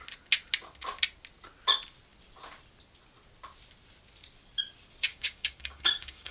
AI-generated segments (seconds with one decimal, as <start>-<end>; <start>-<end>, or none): 5.1-6.3